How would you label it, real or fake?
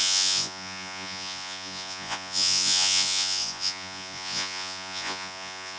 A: fake